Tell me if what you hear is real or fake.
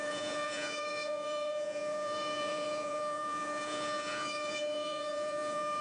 fake